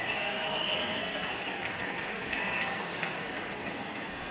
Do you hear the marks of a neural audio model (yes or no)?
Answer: yes